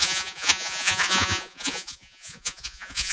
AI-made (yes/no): yes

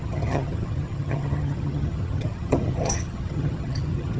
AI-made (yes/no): yes